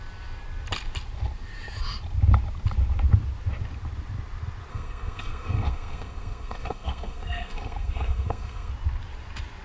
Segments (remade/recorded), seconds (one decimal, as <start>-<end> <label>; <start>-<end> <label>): 0.0-4.7 recorded; 4.7-8.7 remade; 8.7-9.6 recorded